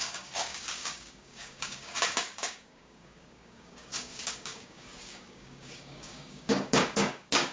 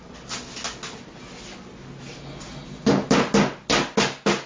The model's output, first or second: first